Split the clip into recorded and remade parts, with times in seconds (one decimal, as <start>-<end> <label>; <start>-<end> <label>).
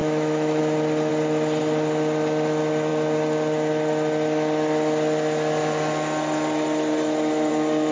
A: 0.0-0.6 remade; 0.6-7.9 recorded